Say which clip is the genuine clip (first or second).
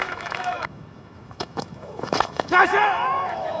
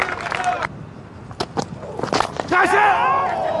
second